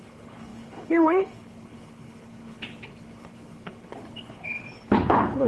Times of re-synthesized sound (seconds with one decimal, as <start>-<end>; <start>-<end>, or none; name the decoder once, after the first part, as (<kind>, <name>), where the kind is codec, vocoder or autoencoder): 0.0-5.5 (codec, HILCodec)